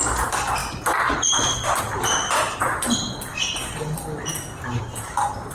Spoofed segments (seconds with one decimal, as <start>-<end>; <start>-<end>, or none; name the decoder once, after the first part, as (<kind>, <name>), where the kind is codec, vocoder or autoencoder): none